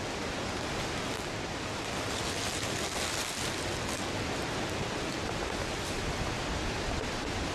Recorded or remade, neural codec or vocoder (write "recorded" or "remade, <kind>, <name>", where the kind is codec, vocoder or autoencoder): recorded